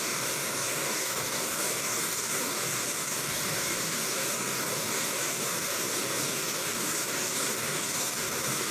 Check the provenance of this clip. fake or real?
fake